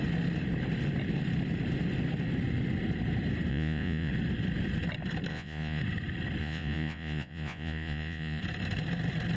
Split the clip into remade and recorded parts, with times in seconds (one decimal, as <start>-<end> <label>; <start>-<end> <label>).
0.0-3.5 recorded; 3.5-4.1 remade; 4.1-5.3 recorded; 5.3-5.8 remade; 5.8-6.4 recorded; 6.4-8.4 remade; 8.4-9.4 recorded